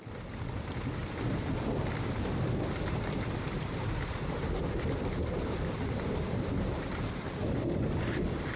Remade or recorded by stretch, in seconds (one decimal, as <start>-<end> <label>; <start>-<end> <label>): 0.0-2.8 recorded; 2.8-7.8 remade; 7.8-8.6 recorded